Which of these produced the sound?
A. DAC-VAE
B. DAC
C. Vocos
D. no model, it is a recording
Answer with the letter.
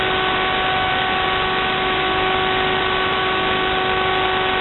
D